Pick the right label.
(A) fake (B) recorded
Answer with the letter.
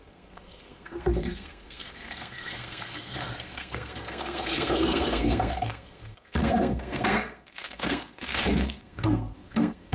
A